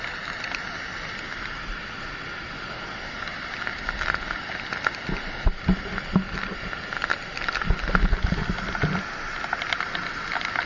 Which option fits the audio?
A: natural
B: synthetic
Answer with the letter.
A